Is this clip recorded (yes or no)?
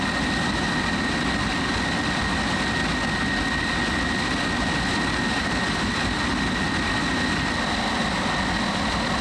yes